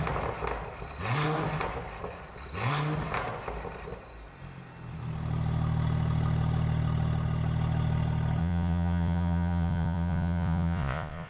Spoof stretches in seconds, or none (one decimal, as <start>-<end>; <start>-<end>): 8.4-11.3